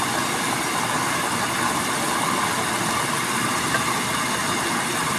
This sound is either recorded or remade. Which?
recorded